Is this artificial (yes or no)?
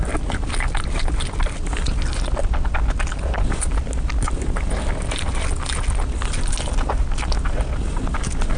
no